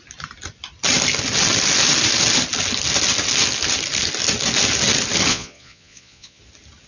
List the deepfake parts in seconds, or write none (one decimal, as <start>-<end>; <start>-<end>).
5.3-6.4